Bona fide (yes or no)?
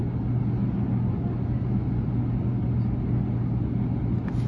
yes